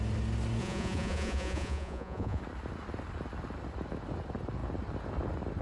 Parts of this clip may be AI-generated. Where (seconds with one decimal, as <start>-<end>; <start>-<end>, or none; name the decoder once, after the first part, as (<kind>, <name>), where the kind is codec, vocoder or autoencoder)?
0.6-2.4 (vocoder, Vocos)